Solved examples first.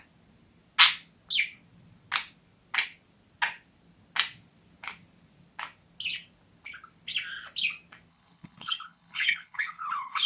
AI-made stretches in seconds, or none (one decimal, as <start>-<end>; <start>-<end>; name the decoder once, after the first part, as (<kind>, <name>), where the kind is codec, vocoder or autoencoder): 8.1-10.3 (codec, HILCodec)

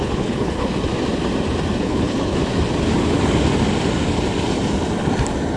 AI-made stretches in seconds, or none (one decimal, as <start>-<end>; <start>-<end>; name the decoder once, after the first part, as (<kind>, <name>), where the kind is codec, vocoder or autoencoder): 0.0-0.7 (codec, HILCodec); 1.8-2.4

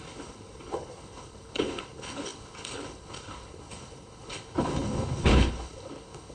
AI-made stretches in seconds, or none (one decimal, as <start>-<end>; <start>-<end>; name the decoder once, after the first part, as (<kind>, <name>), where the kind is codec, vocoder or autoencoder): 0.0-6.3 (codec, HILCodec)